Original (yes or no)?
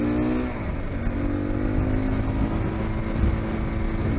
yes